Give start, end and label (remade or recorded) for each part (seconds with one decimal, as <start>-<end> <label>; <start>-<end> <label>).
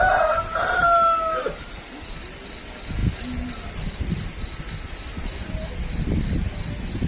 0.0-7.1 recorded